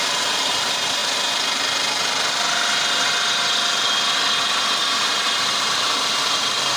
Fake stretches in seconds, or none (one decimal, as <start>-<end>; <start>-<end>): 0.0-1.0; 4.9-6.8